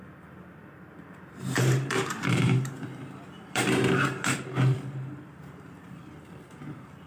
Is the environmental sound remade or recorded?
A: remade